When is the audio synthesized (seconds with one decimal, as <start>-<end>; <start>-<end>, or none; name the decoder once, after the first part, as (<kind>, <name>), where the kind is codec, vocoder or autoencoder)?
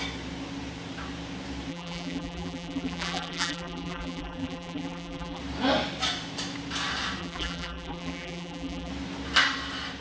1.7-5.4 (vocoder, BigVGAN v2); 7.2-8.9